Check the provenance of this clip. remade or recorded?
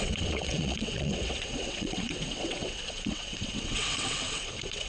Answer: remade